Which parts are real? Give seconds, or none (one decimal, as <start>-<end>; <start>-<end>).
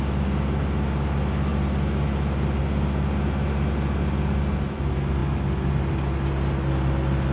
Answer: 0.0-7.3